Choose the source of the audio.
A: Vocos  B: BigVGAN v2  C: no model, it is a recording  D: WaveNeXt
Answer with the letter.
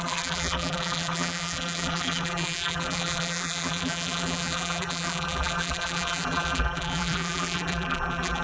B